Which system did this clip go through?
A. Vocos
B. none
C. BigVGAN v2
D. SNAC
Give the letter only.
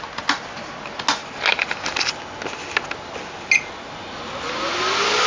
B